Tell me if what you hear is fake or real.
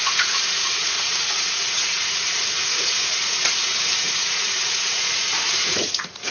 fake